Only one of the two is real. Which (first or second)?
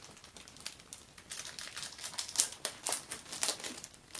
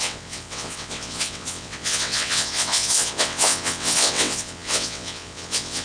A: first